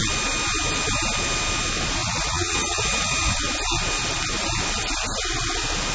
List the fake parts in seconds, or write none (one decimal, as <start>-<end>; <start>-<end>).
2.0-3.4